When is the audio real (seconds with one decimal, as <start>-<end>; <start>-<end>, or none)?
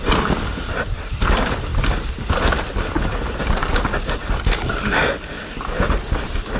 0.0-6.6